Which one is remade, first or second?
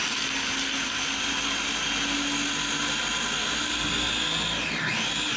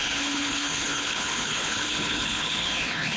second